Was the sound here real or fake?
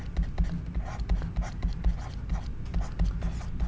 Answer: real